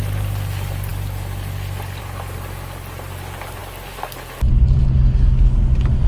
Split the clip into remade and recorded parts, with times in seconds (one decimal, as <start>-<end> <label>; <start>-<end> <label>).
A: 0.0-3.6 recorded; 3.6-4.8 remade; 4.8-6.1 recorded